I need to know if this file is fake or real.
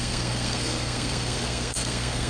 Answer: fake